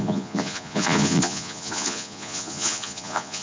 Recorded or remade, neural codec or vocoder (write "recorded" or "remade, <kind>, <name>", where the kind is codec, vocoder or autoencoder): remade, vocoder, Vocos